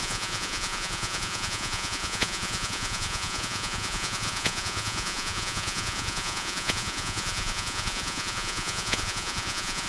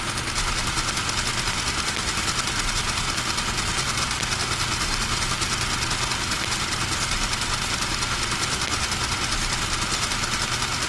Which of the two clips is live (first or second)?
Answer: second